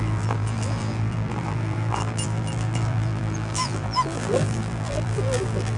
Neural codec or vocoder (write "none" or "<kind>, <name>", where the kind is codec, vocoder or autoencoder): vocoder, BigVGAN v2